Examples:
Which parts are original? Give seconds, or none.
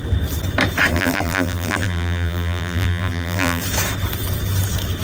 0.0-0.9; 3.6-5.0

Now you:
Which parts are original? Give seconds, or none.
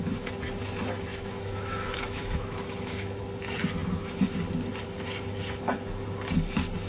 0.0-1.1; 3.2-6.9